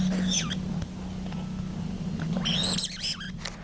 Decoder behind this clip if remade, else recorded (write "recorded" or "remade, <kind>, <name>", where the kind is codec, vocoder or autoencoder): recorded